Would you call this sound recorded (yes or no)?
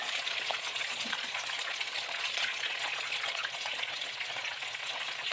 no